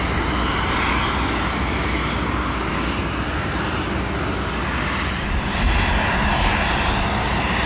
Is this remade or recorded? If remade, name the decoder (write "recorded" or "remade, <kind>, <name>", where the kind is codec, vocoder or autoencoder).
recorded